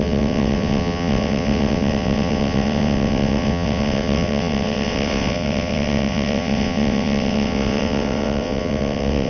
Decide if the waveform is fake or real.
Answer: fake